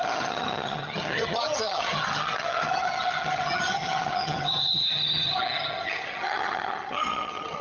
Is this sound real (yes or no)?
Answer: no